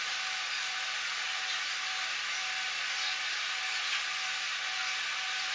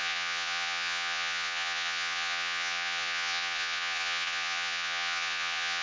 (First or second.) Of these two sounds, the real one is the first